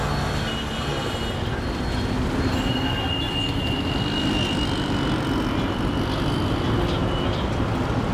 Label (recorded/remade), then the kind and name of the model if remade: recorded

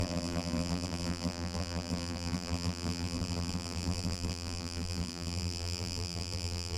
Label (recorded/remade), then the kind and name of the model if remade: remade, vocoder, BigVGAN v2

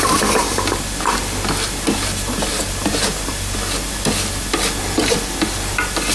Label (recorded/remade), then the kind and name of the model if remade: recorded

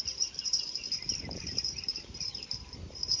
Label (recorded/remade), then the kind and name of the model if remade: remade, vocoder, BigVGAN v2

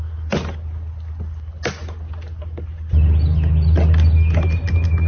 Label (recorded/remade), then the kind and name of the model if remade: recorded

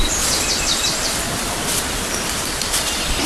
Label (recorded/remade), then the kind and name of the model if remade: remade, vocoder, BigVGAN v2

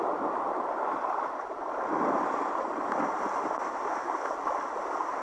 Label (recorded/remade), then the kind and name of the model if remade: recorded